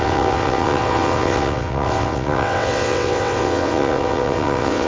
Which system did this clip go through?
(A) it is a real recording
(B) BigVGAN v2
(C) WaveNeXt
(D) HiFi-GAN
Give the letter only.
C